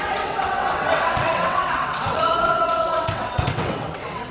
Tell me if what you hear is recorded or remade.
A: remade